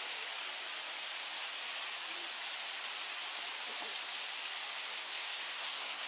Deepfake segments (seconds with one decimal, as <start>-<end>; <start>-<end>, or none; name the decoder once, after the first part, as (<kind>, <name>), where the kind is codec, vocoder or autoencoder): 5.0-6.1 (codec, SNAC)